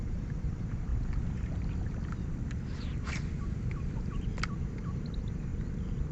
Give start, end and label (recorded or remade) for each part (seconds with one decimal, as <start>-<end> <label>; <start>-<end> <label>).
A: 0.0-0.9 remade; 0.9-4.6 recorded; 4.6-5.5 remade; 5.5-6.1 recorded